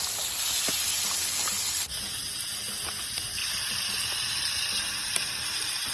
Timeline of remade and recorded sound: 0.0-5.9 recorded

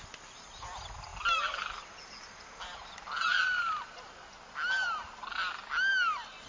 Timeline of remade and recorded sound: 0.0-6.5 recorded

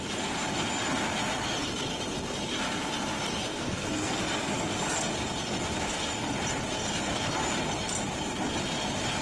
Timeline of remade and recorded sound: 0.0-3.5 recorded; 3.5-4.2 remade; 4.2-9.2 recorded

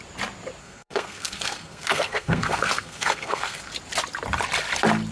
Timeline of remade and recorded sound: 0.0-0.6 recorded; 0.6-3.7 remade; 3.7-5.1 recorded